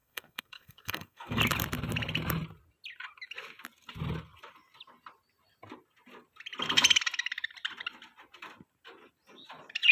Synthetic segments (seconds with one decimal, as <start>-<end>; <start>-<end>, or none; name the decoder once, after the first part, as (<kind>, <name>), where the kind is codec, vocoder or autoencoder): 0.0-1.4 (codec, SNAC)